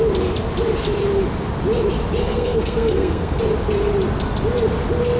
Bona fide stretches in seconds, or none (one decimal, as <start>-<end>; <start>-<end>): 0.0-2.2; 3.4-5.2